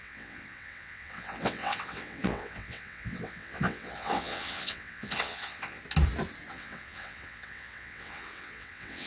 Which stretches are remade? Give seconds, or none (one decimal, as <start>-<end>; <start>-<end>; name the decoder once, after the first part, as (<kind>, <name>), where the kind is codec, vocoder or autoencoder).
0.0-5.8 (vocoder, WaveNeXt); 6.5-9.1